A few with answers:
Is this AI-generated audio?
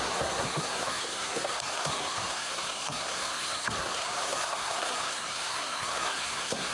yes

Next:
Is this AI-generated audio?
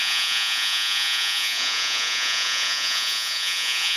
yes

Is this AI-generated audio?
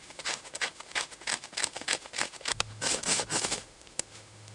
yes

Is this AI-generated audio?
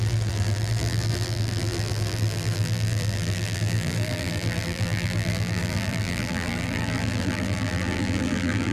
yes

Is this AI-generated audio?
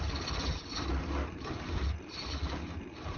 no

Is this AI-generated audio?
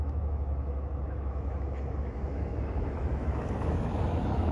yes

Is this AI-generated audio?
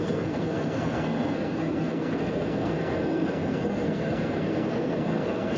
yes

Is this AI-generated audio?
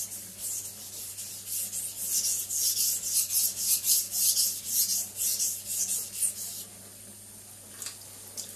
no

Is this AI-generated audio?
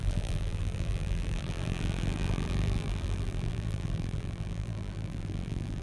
yes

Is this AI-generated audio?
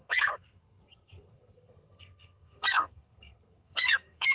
yes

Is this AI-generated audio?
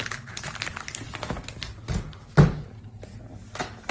no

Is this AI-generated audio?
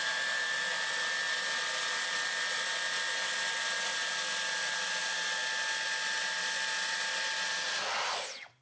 no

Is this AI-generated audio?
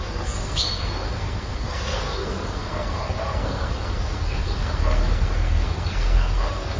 yes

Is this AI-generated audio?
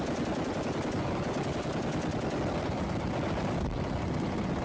no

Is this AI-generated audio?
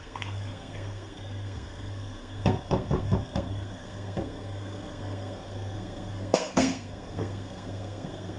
yes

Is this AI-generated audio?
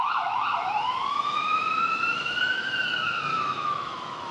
yes